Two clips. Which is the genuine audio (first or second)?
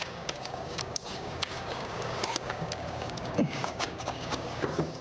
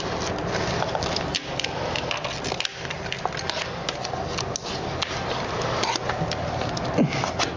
second